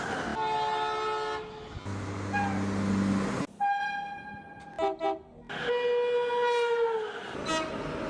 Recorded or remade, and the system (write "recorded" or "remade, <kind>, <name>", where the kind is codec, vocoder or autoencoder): recorded